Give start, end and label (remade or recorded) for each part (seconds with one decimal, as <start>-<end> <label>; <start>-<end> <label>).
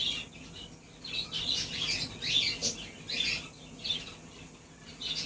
0.0-5.3 recorded